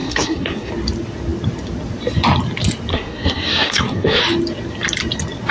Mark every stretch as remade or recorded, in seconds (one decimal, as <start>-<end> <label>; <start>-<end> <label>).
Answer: 0.0-0.7 remade; 0.7-2.9 recorded; 2.9-4.2 remade; 4.2-5.5 recorded